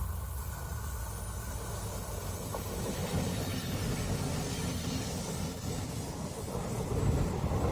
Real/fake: real